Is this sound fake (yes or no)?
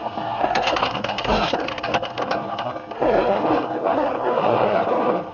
yes